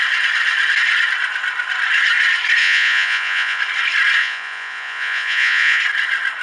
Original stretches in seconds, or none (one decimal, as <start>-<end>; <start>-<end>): 0.0-2.6; 3.6-4.2; 5.8-6.4